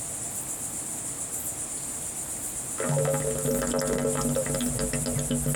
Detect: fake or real real